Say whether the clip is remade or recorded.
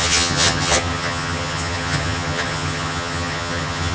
remade